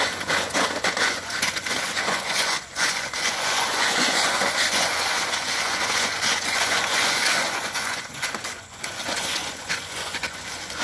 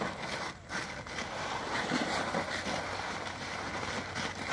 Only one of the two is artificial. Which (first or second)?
first